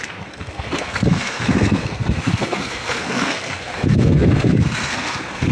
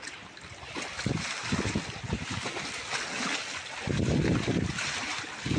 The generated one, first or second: first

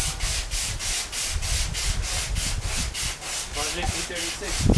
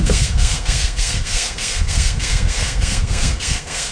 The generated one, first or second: second